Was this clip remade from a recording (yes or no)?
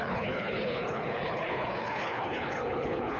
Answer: yes